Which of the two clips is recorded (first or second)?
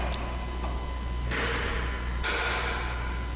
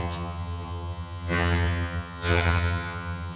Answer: first